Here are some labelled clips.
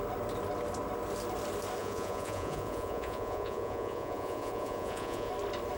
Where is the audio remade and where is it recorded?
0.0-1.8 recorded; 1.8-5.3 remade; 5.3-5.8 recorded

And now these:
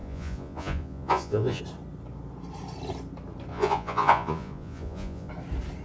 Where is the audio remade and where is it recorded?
0.0-1.6 remade; 1.6-3.5 recorded; 3.5-5.3 remade; 5.3-5.8 recorded

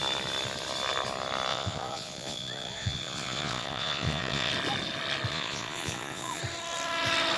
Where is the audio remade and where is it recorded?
0.0-1.5 recorded; 1.5-4.5 remade; 4.5-5.3 recorded; 5.3-6.4 remade; 6.4-7.4 recorded

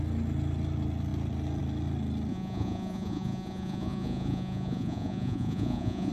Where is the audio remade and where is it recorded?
0.0-2.3 recorded; 2.3-6.1 remade

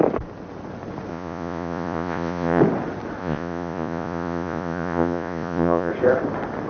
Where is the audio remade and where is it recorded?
0.0-1.1 recorded; 1.1-2.6 remade; 2.6-3.2 recorded; 3.2-5.9 remade; 5.9-6.7 recorded

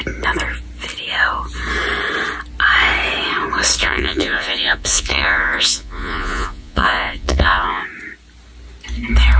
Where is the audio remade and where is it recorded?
0.0-3.8 recorded; 3.8-7.8 remade; 7.8-9.4 recorded

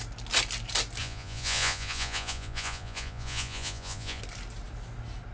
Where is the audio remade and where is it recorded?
0.0-1.0 recorded; 1.0-4.2 remade; 4.2-5.3 recorded